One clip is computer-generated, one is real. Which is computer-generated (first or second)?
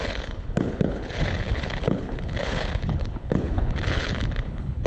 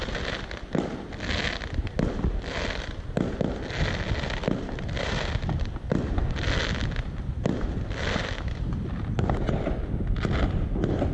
first